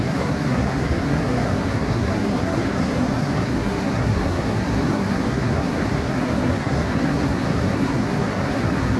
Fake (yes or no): yes